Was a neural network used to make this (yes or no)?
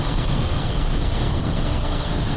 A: yes